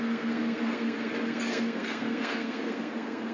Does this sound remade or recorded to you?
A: remade